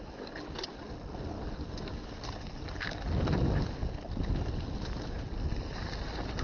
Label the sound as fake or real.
real